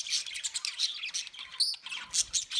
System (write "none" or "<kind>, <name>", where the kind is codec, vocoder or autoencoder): none